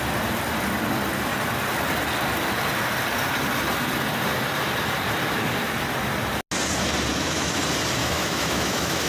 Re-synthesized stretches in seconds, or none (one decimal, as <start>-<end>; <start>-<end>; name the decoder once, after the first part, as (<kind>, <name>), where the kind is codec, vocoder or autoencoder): 7.1-7.6 (autoencoder, DAC-VAE); 8.0-9.1